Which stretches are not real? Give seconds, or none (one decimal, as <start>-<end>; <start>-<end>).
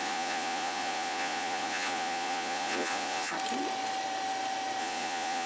0.0-3.3; 4.8-5.5